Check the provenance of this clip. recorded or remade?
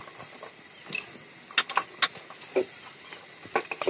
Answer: recorded